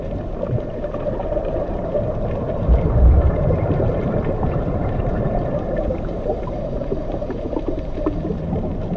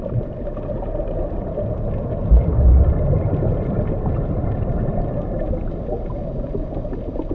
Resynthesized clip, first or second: first